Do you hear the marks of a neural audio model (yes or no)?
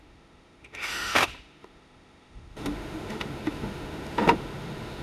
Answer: yes